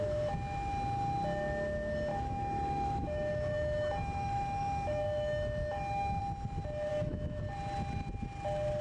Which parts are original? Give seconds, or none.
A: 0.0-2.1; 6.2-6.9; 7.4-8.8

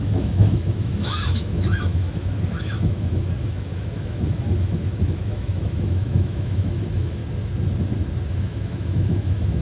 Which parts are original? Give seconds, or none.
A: 7.2-8.3

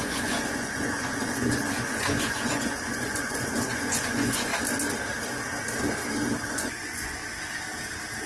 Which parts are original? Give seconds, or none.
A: 4.5-6.5; 7.2-8.3

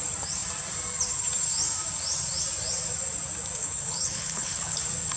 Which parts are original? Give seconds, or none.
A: 0.0-3.6; 4.8-5.2